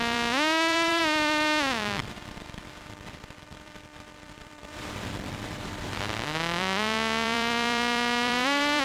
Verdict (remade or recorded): remade